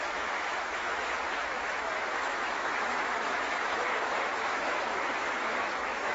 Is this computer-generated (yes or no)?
yes